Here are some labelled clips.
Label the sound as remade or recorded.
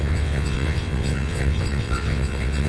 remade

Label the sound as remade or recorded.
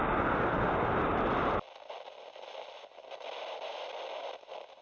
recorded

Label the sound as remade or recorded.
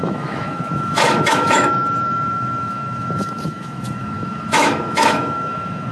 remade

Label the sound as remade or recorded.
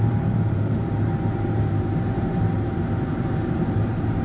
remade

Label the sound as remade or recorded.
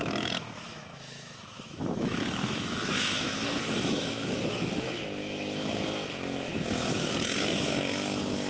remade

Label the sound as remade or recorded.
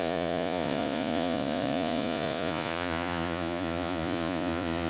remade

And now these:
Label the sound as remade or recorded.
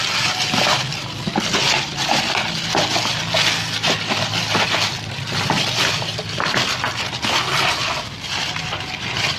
recorded